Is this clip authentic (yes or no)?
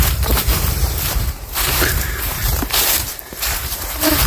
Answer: no